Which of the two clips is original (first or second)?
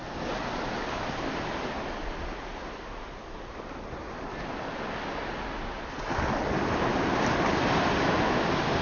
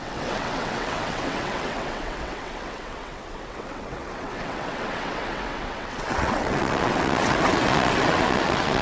first